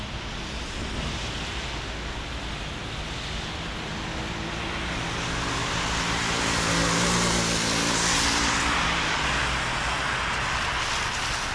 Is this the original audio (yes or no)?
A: yes